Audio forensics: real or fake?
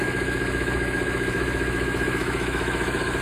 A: fake